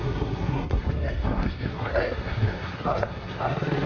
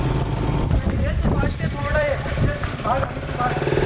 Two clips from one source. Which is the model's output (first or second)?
first